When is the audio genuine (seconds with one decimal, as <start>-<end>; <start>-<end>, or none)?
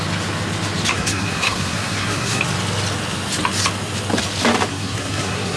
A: 0.0-0.9; 2.4-4.7